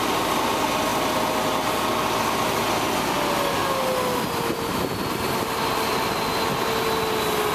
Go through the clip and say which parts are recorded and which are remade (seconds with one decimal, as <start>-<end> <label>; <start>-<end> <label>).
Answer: 0.0-7.5 recorded